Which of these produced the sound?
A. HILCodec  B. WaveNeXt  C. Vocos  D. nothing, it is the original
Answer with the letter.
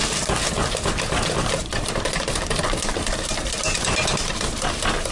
D